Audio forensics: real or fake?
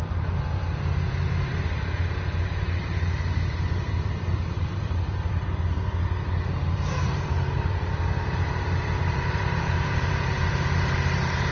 fake